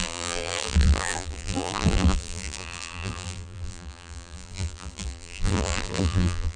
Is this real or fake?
fake